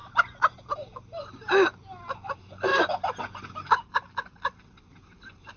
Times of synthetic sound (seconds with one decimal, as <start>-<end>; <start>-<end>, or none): none